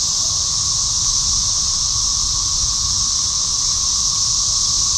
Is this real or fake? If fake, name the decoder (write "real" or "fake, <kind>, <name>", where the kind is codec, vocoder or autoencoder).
fake, vocoder, BigVGAN v2